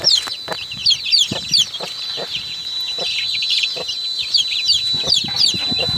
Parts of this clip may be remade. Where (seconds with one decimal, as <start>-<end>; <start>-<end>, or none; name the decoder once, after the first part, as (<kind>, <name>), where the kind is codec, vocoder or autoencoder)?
2.6-6.0 (vocoder, BigVGAN v2)